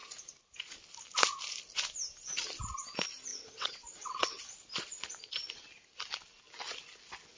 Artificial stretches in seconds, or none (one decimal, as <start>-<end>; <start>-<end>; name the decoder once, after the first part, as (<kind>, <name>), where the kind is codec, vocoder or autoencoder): 3.3-4.4 (vocoder, WaveNeXt)